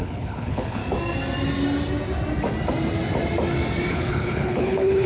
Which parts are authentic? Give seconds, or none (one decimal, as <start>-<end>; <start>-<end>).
0.8-3.9